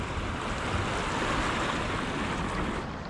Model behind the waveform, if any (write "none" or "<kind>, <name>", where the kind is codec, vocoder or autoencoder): none